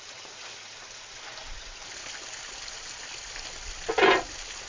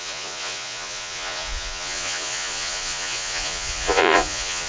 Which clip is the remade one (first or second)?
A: second